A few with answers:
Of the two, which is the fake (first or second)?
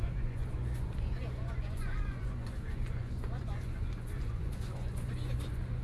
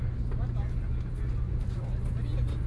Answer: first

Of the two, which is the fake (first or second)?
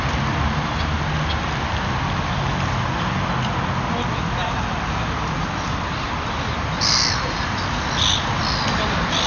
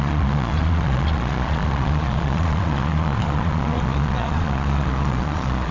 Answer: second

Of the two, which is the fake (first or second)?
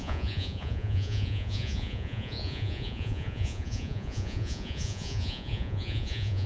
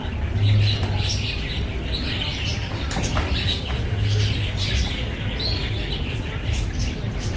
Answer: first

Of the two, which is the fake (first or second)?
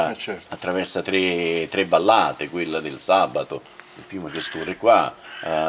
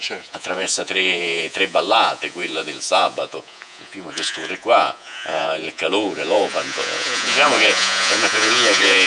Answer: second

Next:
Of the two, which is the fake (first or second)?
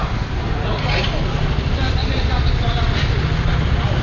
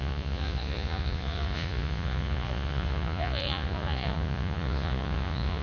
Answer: second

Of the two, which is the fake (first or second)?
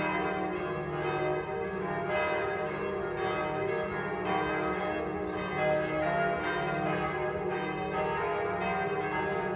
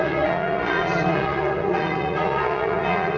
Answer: second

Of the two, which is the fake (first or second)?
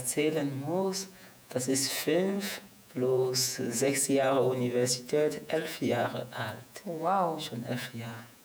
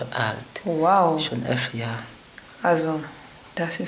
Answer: first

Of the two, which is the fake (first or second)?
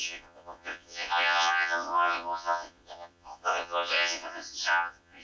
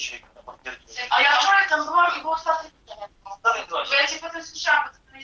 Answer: first